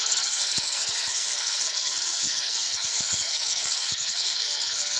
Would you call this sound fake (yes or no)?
yes